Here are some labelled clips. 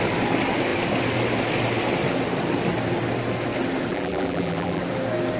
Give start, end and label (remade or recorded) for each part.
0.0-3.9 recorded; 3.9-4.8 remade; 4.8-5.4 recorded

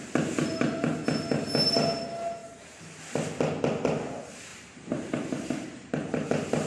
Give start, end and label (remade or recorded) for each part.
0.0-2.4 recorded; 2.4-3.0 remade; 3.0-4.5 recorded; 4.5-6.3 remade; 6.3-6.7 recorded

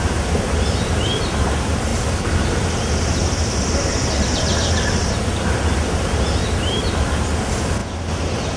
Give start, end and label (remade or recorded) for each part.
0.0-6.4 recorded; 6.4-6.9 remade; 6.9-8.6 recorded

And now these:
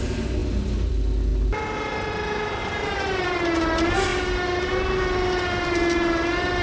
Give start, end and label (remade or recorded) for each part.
0.0-0.4 recorded; 0.4-0.9 remade; 0.9-2.6 recorded; 2.6-3.4 remade; 3.4-4.1 recorded; 4.1-4.7 remade; 4.7-6.6 recorded

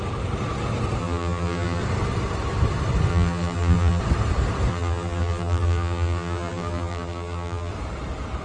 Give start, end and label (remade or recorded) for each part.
0.0-1.0 recorded; 1.0-1.8 remade; 1.8-3.1 recorded; 3.1-4.0 remade; 4.0-4.7 recorded; 4.7-7.7 remade; 7.7-8.4 recorded

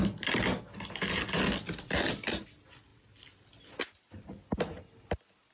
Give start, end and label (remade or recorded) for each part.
0.0-5.5 recorded